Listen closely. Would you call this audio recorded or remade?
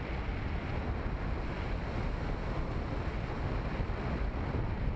recorded